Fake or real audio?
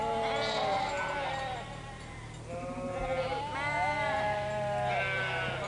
real